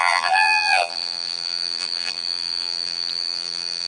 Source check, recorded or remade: remade